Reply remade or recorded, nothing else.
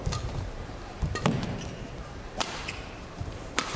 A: remade